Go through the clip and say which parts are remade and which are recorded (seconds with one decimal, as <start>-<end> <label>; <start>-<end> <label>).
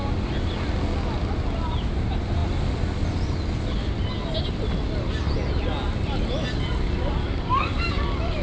0.0-7.2 recorded; 7.2-7.9 remade; 7.9-8.4 recorded